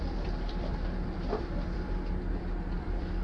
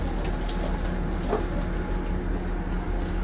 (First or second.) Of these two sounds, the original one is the second